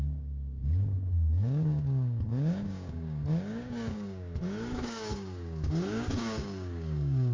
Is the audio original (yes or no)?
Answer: no